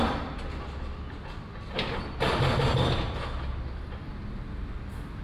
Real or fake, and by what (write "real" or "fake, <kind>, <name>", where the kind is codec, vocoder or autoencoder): real